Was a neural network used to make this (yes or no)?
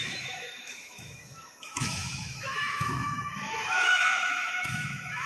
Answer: yes